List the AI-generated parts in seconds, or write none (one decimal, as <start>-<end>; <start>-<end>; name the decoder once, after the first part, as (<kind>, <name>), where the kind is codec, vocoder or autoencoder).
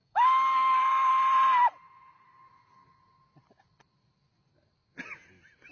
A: 0.0-1.1 (codec, DAC)